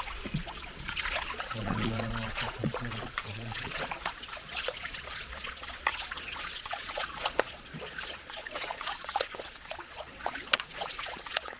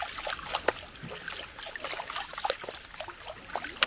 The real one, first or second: second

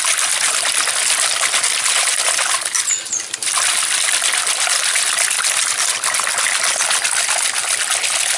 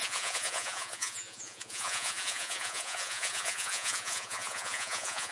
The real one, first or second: first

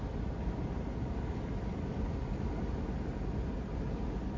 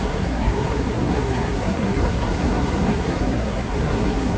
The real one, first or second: first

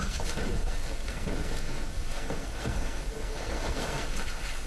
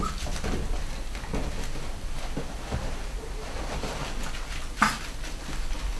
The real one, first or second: second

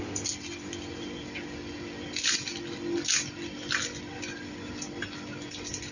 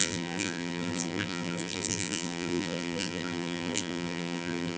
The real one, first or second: first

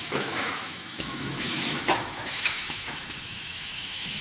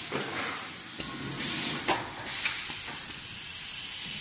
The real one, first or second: second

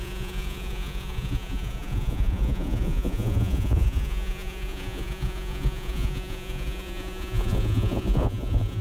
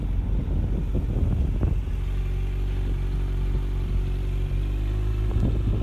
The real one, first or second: second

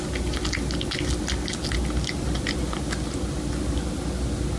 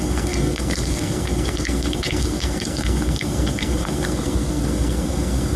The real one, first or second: first